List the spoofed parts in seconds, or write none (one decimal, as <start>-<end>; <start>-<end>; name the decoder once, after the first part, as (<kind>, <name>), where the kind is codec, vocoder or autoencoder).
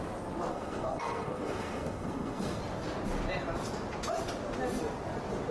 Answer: 0.5-2.6 (codec, SNAC)